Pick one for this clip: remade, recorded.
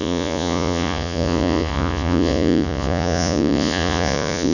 remade